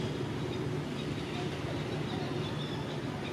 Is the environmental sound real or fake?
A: real